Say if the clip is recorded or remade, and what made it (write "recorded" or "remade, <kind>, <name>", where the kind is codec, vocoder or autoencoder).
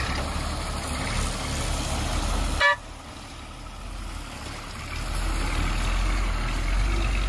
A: recorded